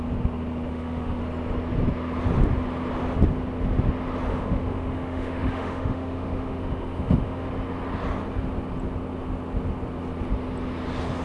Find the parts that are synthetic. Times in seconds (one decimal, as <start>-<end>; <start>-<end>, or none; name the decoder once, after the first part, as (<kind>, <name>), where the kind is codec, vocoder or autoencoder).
0.7-1.2 (autoencoder, DAC-VAE); 4.3-7.5